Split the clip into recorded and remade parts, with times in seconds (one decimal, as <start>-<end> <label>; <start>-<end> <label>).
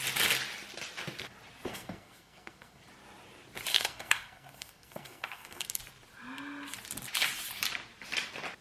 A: 0.0-1.7 recorded; 1.7-2.8 remade; 2.8-3.7 recorded; 3.7-5.8 remade; 5.8-8.6 recorded